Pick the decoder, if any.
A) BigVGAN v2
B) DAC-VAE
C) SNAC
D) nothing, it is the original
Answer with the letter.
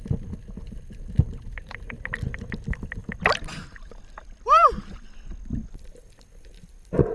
D